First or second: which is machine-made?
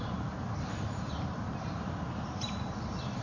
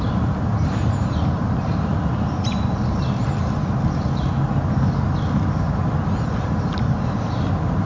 first